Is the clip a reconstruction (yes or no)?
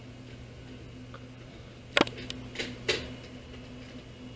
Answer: no